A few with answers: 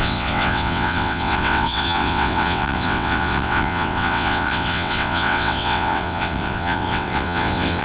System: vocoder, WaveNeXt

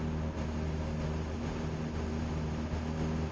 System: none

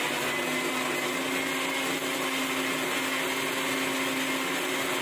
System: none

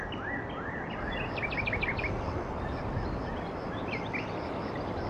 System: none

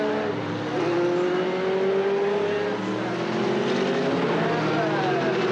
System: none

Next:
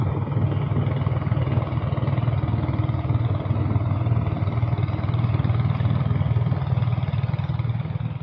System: none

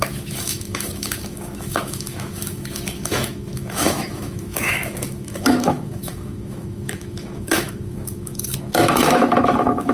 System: autoencoder, DAC-VAE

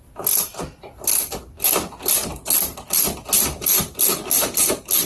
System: none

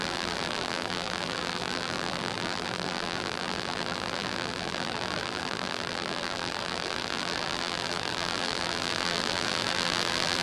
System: vocoder, BigVGAN v2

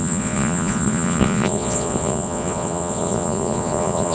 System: vocoder, Vocos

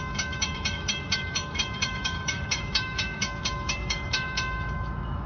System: autoencoder, DAC-VAE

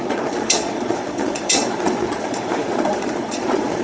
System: vocoder, Vocos